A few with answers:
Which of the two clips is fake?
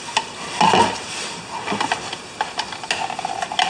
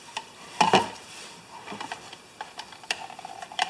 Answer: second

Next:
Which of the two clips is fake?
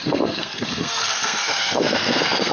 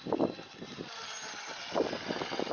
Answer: first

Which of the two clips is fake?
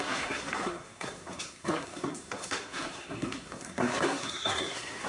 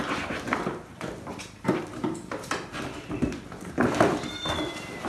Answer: first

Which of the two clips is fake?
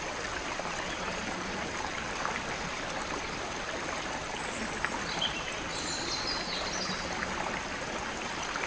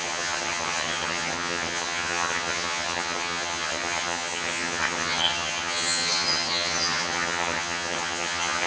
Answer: second